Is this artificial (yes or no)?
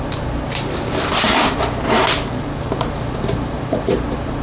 no